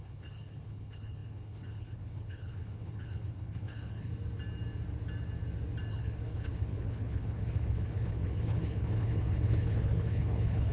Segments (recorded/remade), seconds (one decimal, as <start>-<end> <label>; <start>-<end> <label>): 0.0-4.1 remade; 4.1-5.9 recorded; 5.9-10.7 remade